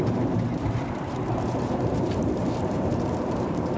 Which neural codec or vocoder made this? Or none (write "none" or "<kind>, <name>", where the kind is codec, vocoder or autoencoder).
vocoder, BigVGAN v2